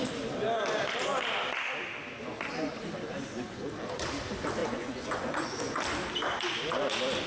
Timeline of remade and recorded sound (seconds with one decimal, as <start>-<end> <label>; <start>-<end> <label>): 0.0-4.6 recorded; 4.6-5.8 remade; 5.8-7.3 recorded